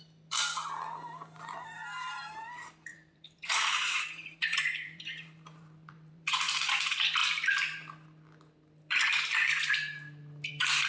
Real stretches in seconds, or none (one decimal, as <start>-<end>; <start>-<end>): 0.0-2.9; 6.7-10.9